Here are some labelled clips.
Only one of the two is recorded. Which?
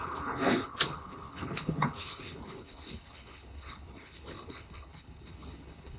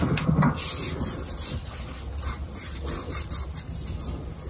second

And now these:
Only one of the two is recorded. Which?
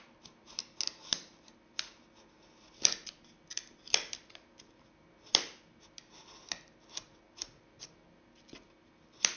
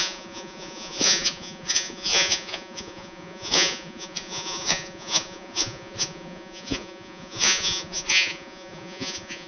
first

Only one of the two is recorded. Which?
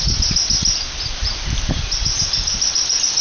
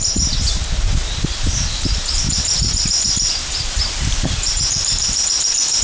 first